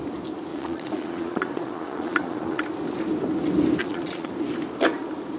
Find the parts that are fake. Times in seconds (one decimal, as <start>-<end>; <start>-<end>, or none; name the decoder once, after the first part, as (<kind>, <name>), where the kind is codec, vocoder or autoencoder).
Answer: 0.5-2.6 (vocoder, Vocos); 3.8-4.3